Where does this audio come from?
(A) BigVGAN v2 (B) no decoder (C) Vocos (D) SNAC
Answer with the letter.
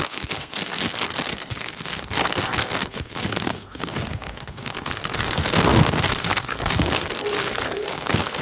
D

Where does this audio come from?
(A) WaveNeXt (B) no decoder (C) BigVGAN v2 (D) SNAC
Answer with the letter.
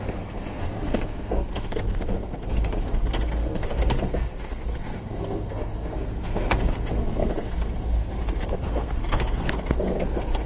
D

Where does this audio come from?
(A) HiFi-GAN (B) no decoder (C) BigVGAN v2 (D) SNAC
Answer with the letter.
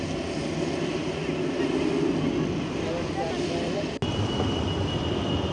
B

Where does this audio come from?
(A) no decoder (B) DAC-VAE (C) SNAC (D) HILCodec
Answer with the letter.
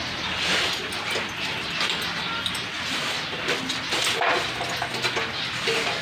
A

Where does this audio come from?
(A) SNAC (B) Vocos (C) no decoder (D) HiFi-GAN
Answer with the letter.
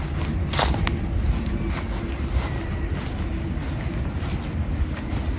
C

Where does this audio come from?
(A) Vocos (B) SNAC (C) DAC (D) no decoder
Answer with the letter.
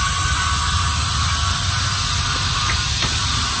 D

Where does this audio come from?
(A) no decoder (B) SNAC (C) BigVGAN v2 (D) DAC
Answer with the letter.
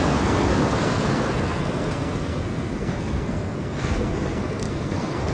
B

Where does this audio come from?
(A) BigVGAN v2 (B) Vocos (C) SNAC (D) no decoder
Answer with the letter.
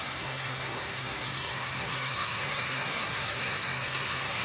C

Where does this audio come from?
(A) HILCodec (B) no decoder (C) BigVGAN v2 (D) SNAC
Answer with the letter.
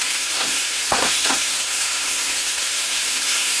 D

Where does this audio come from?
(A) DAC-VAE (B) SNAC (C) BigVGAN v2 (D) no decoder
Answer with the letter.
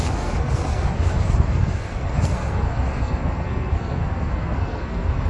B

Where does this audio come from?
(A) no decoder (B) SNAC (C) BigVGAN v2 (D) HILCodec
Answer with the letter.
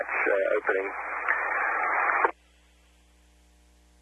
A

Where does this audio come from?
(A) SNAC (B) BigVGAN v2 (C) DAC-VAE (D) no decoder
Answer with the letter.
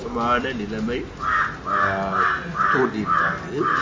D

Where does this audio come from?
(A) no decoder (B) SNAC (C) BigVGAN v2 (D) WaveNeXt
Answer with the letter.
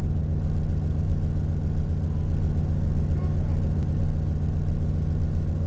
A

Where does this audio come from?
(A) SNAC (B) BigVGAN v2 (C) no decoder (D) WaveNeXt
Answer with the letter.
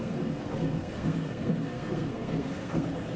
A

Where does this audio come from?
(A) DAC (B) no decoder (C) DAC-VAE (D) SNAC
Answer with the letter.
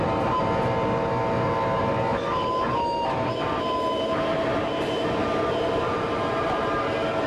B